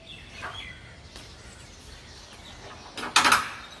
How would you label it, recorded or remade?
recorded